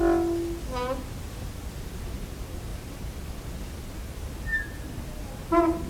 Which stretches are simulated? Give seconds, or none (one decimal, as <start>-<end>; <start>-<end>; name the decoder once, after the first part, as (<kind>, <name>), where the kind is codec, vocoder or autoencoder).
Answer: 2.7-3.3 (vocoder, BigVGAN v2)